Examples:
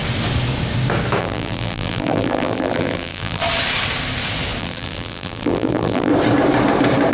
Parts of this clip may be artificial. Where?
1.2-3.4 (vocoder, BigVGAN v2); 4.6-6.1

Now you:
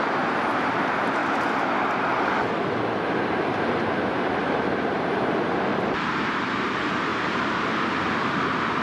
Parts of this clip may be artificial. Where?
0.0-1.2 (vocoder, BigVGAN v2); 3.1-8.8

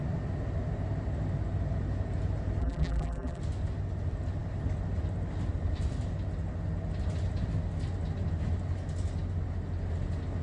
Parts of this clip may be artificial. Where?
2.6-3.4 (vocoder, BigVGAN v2)